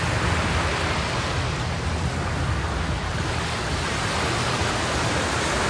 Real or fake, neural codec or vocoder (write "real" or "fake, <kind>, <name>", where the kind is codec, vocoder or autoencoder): real